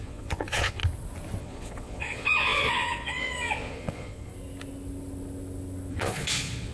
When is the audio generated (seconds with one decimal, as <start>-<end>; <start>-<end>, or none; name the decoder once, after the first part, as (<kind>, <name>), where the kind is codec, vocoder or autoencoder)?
0.0-0.8 (vocoder, Vocos); 1.4-4.3; 5.9-6.7